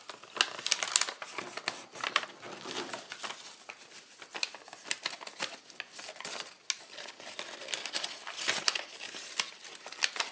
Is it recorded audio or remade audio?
recorded